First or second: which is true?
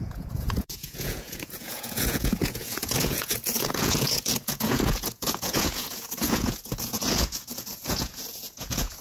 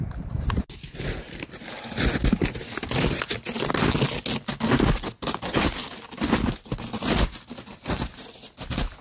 second